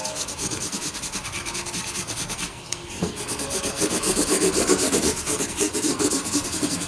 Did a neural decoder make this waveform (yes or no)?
yes